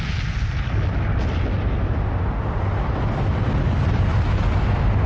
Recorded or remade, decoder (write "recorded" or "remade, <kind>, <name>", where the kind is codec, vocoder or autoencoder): recorded